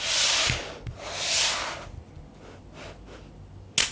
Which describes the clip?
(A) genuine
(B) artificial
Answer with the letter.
A